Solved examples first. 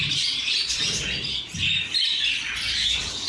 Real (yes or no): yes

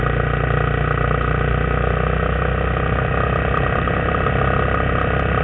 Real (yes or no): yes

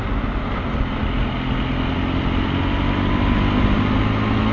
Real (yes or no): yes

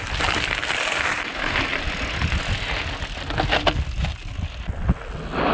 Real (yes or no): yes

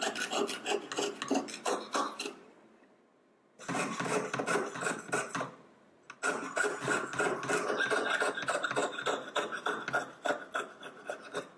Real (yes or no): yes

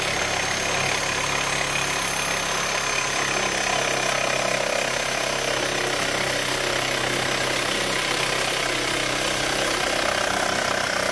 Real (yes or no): yes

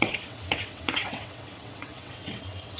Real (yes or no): no